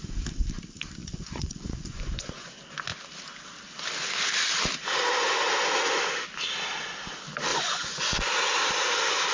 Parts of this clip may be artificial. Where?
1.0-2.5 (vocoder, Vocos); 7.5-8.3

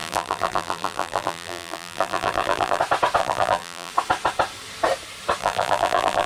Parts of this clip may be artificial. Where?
0.0-2.8 (vocoder, BigVGAN v2); 3.2-3.9; 5.4-6.3

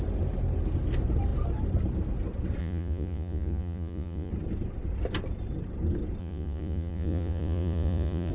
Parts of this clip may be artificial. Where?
2.6-4.3 (vocoder, Vocos); 6.2-8.3

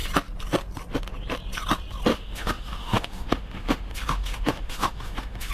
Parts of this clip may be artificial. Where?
2.1-5.5 (autoencoder, DAC-VAE)

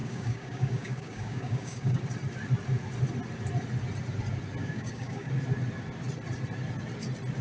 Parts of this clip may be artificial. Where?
0.0-2.0 (codec, DAC); 4.6-5.3